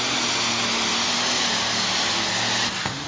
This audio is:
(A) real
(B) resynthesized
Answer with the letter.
A